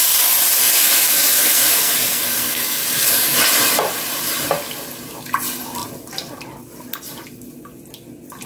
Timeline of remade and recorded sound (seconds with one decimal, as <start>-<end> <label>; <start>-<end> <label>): 0.0-0.6 recorded; 0.6-3.4 remade; 3.4-8.5 recorded